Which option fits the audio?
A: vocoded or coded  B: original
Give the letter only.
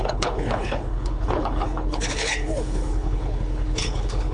A